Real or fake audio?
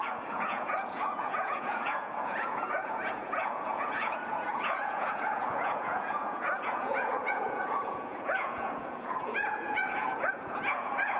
fake